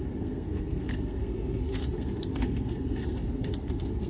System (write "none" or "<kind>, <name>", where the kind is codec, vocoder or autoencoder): codec, SNAC